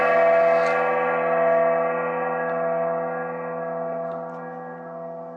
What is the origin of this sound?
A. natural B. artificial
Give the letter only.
A